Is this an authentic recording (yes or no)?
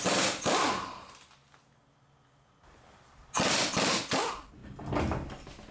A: yes